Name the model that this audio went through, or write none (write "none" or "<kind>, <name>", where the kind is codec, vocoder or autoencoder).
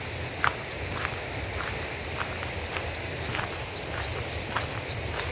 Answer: none